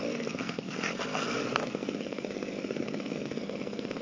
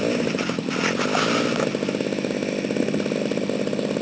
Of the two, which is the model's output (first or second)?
first